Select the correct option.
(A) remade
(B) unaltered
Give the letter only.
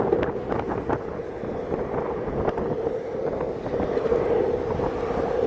B